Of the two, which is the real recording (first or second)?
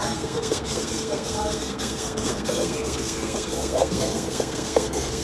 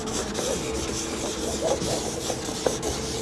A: second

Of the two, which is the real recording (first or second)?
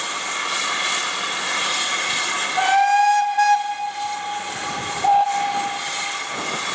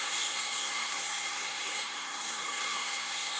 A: first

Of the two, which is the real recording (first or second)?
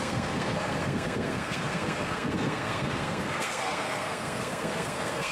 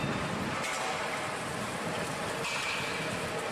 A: second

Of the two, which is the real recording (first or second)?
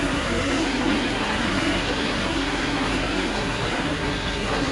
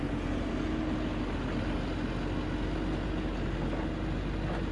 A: second